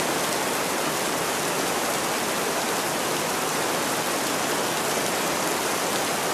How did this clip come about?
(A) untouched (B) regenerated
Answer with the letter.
A